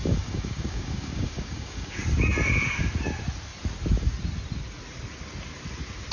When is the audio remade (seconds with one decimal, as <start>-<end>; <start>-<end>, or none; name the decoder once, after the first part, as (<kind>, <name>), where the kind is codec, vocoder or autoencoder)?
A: 0.0-2.0 (codec, DAC)

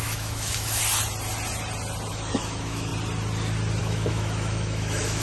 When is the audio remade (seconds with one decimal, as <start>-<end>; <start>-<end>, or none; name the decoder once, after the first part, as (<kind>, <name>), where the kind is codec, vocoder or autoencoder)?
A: 0.0-0.8 (autoencoder, DAC-VAE); 2.1-2.9; 3.8-5.2

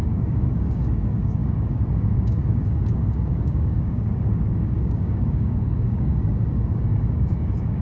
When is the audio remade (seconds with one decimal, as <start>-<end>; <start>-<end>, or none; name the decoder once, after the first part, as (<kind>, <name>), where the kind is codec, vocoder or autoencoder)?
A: 0.0-7.8 (codec, DAC)

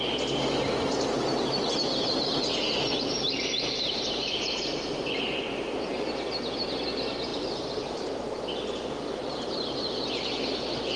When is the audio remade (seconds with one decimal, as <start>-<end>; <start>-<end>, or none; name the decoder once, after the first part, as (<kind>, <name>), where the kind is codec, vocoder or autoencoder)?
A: 1.9-5.3 (vocoder, BigVGAN v2); 7.3-8.1

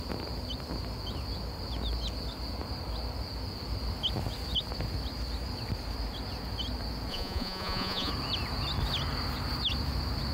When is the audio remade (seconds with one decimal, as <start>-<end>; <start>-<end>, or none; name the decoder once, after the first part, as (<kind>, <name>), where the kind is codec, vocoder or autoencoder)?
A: 7.1-8.1 (vocoder, Vocos)

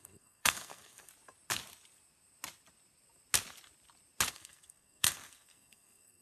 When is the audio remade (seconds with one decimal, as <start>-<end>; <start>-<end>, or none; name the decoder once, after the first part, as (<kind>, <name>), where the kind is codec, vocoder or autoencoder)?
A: 0.0-1.1 (codec, SNAC); 4.3-6.2

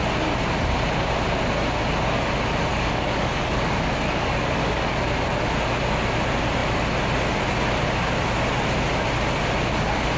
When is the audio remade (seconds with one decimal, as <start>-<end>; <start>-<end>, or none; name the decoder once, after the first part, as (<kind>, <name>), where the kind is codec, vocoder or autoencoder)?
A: 2.7-4.9 (codec, DAC)

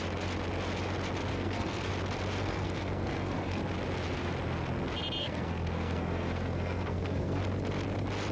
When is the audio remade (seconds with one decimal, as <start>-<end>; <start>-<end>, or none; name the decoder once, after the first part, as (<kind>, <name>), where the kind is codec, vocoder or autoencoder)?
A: 1.3-1.9 (codec, SNAC); 2.4-3.6; 5.2-7.4